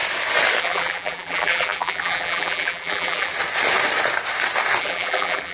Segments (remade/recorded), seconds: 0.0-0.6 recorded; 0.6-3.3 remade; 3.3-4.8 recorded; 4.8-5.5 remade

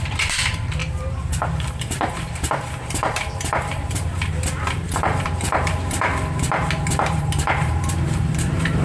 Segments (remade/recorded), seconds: 0.0-4.1 remade; 4.1-4.7 recorded; 4.7-6.1 remade; 6.1-6.9 recorded; 6.9-8.8 remade